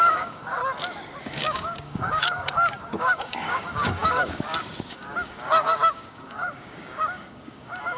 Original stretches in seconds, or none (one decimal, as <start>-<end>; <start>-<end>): 0.6-1.2